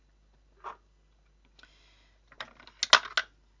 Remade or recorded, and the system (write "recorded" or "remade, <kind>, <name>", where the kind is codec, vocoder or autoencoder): recorded